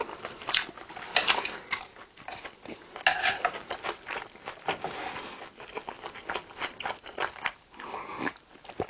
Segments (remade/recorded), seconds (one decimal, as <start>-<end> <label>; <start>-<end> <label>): 0.0-8.9 recorded